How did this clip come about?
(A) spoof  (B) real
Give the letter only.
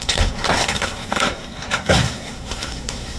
A